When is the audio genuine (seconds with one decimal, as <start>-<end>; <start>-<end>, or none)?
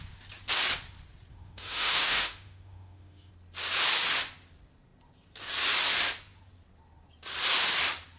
0.0-1.3; 3.3-8.2